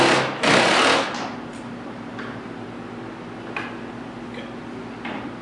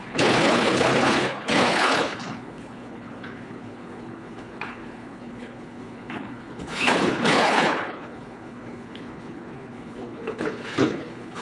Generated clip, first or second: second